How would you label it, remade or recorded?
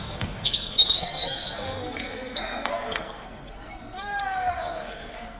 remade